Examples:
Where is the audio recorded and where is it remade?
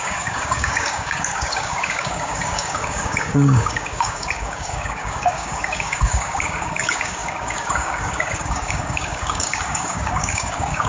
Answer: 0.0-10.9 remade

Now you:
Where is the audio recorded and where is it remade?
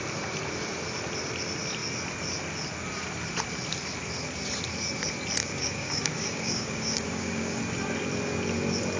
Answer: 0.0-5.4 recorded; 5.4-7.6 remade; 7.6-9.0 recorded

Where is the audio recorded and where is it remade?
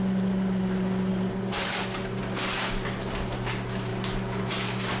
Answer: 0.0-5.0 recorded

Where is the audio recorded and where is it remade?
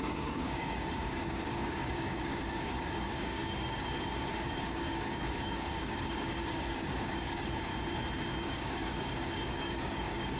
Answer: 0.0-7.7 remade; 7.7-8.4 recorded; 8.4-10.4 remade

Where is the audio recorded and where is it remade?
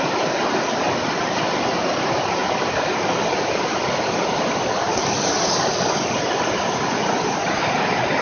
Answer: 0.0-8.2 recorded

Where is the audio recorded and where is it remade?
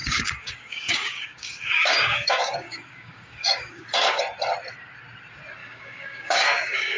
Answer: 0.0-4.2 remade; 4.2-5.6 recorded; 5.6-7.0 remade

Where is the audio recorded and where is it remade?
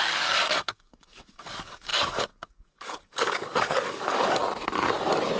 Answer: 0.0-4.4 remade; 4.4-5.4 recorded